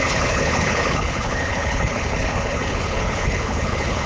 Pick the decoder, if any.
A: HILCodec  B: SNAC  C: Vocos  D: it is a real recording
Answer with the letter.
A